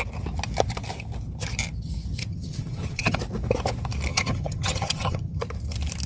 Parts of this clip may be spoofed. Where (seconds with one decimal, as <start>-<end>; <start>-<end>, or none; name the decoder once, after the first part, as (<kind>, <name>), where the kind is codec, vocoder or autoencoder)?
2.3-3.2 (vocoder, HiFi-GAN); 4.1-5.4